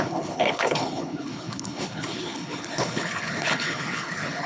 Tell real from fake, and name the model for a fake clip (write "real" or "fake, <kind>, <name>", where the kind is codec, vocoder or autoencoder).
fake, codec, HILCodec